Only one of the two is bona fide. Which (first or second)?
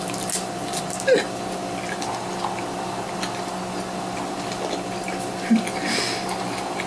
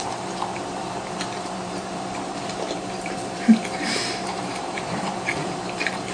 first